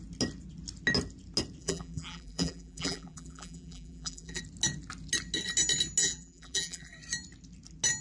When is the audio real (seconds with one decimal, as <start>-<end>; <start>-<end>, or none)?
0.0-1.6; 4.4-6.0; 6.9-8.0